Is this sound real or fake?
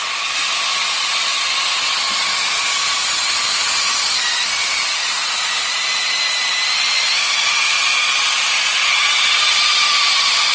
real